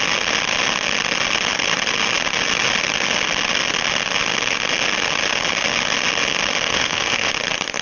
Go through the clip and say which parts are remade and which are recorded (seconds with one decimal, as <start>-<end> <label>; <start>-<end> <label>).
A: 0.0-6.7 recorded; 6.7-7.3 remade; 7.3-7.8 recorded